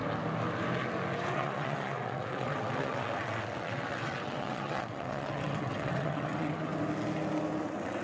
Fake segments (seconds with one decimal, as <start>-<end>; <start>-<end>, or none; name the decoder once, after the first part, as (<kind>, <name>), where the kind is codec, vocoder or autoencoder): 1.3-6.7 (vocoder, WaveNeXt); 7.6-8.0